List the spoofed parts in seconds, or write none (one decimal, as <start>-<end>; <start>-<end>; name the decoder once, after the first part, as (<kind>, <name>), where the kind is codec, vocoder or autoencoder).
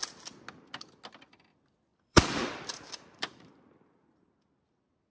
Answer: 1.9-3.5 (vocoder, BigVGAN v2)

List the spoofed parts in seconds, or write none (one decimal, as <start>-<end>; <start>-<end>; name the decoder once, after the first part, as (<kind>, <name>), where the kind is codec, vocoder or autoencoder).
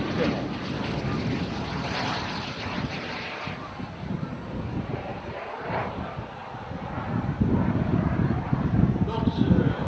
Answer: 5.1-6.0 (vocoder, BigVGAN v2); 7.9-9.9